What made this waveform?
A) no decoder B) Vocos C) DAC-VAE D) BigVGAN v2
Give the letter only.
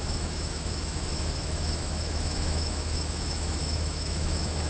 C